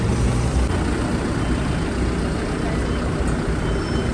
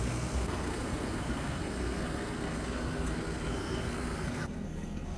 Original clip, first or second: first